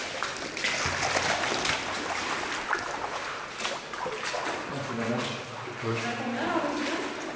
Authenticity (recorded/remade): recorded